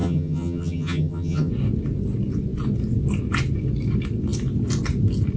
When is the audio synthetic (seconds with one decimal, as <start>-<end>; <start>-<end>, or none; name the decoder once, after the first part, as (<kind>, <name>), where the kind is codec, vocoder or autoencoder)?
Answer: 0.0-1.5 (vocoder, HiFi-GAN)